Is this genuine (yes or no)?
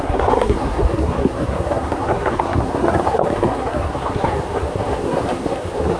no